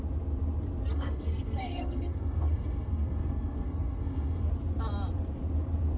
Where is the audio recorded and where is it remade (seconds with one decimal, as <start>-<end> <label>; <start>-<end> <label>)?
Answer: 0.0-0.9 recorded; 0.9-4.5 remade; 4.5-6.0 recorded